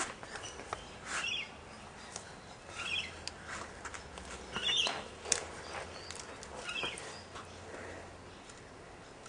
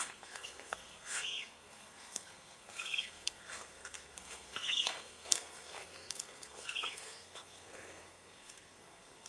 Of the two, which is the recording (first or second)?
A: first